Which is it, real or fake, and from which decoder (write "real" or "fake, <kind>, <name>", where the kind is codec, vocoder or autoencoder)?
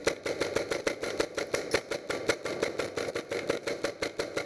real